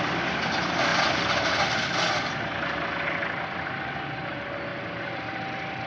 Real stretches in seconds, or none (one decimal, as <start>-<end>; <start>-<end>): 0.0-5.9